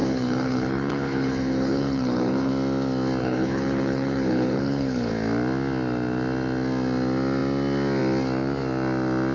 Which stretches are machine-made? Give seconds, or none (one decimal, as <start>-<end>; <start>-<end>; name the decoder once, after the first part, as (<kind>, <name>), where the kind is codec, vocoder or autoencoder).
0.0-2.5 (codec, HILCodec); 3.2-5.1